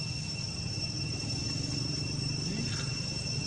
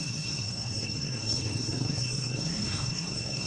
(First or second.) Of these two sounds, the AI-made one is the second